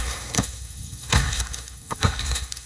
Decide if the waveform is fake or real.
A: fake